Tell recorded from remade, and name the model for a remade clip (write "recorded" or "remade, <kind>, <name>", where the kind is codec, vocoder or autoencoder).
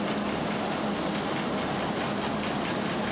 recorded